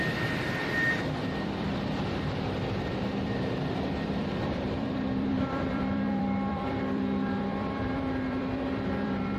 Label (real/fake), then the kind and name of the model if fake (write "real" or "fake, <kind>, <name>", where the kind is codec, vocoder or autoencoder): fake, vocoder, BigVGAN v2